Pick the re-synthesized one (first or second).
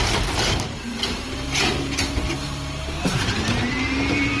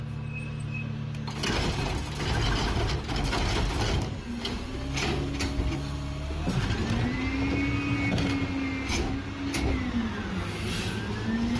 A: first